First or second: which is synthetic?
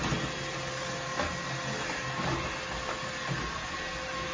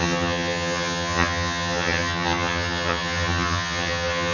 second